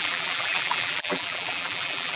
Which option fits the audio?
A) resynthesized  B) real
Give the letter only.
A